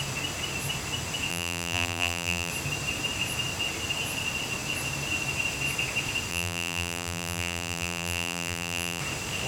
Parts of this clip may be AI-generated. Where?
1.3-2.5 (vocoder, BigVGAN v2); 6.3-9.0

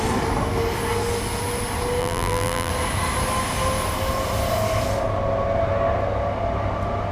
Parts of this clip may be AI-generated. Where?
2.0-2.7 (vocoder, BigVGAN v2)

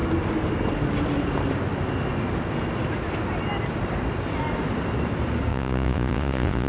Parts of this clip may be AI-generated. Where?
5.5-6.7 (vocoder, Vocos)